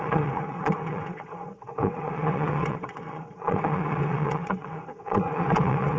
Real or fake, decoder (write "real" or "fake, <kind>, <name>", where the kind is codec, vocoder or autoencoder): fake, vocoder, WaveNeXt